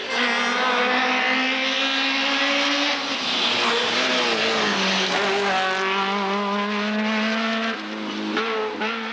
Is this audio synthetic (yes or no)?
no